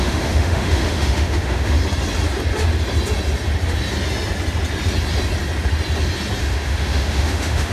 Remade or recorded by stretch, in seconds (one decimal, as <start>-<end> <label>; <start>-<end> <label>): 0.0-1.8 remade; 1.8-6.4 recorded; 6.4-7.7 remade